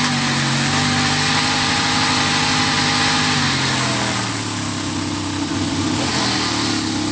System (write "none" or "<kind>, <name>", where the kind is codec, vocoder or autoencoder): none